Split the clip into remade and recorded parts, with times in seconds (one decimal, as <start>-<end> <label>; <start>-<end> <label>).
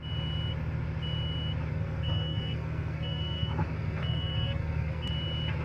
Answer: 0.0-1.7 recorded; 1.7-5.1 remade; 5.1-5.6 recorded